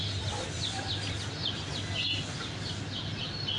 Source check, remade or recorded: recorded